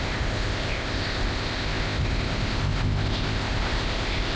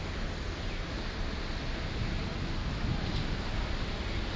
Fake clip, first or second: first